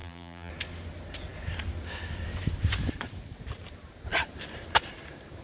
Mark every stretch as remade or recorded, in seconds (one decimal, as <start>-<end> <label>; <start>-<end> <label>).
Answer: 0.0-0.5 remade; 0.5-5.4 recorded